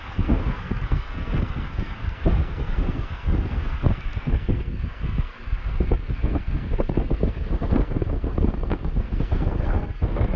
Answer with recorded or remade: remade